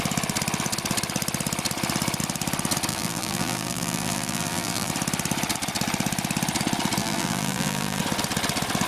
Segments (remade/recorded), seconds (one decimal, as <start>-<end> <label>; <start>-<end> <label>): 0.0-2.9 recorded; 2.9-4.9 remade; 4.9-7.0 recorded; 7.0-8.0 remade; 8.0-8.9 recorded